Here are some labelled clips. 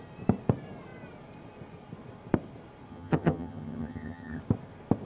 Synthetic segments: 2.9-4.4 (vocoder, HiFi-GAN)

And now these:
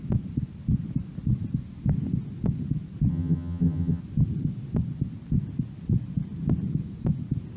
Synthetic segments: 3.1-4.0 (vocoder, HiFi-GAN)

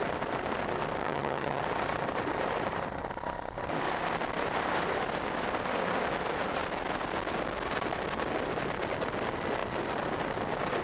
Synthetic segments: 1.0-1.6 (vocoder, HiFi-GAN)

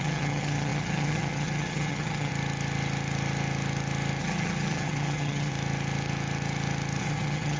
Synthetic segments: 0.0-2.3 (vocoder, HiFi-GAN); 4.2-5.5; 7.0-7.6

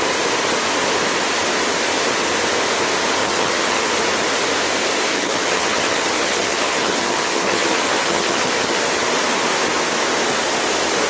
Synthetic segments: 3.2-3.9 (vocoder, HiFi-GAN); 5.1-8.8

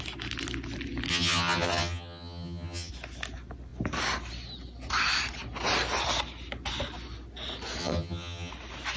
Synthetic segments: 1.1-2.9 (vocoder, HiFi-GAN); 7.8-8.5

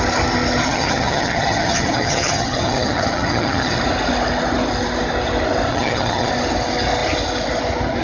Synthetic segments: 0.6-3.8 (vocoder, HiFi-GAN); 5.7-6.3